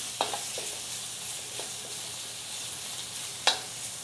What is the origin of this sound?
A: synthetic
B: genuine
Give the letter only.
B